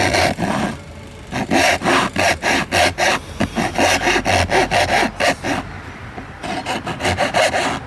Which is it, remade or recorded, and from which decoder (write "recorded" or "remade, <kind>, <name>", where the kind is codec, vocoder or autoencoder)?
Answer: recorded